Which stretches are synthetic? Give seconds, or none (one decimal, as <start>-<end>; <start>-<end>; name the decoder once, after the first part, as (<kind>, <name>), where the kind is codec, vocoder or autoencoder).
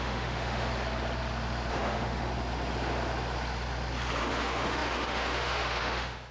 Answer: 0.0-0.7 (autoencoder, DAC-VAE); 1.7-2.3; 4.2-6.3